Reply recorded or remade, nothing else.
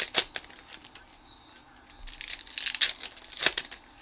recorded